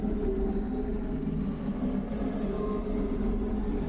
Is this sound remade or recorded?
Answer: recorded